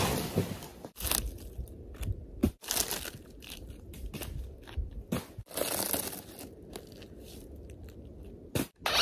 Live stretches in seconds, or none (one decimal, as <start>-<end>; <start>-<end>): 0.0-9.0